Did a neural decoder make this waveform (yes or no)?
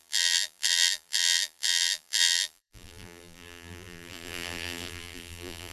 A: yes